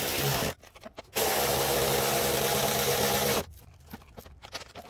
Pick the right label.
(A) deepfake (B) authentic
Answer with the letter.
B